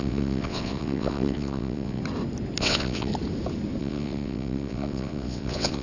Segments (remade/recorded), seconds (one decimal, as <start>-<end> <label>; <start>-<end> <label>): 0.0-2.0 remade; 2.0-2.6 recorded; 2.6-3.1 remade; 3.1-3.8 recorded; 3.8-5.8 remade